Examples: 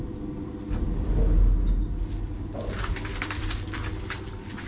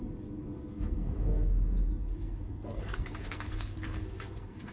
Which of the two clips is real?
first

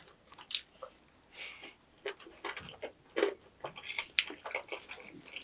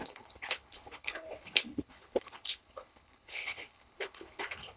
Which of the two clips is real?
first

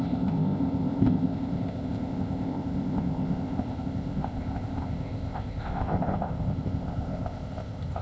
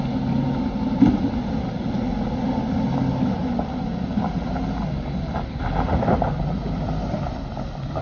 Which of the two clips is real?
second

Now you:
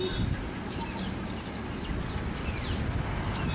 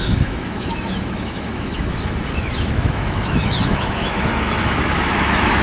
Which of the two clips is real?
first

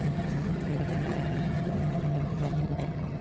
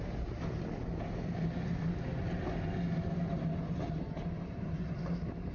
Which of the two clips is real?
second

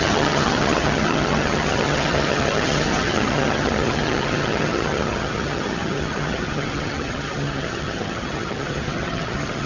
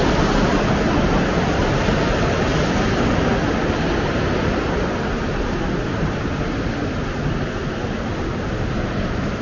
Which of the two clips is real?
second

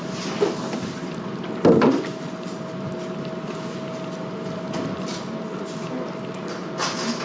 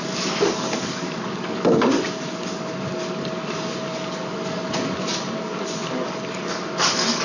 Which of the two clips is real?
first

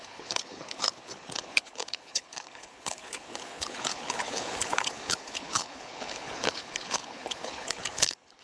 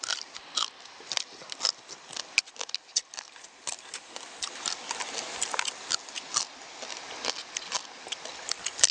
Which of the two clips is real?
second